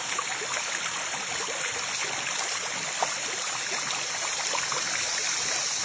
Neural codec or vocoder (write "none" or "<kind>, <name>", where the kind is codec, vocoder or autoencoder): none